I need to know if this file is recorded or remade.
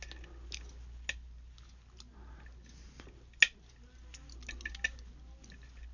recorded